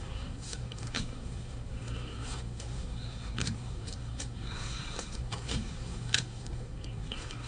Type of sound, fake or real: fake